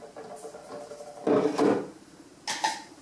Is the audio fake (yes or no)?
no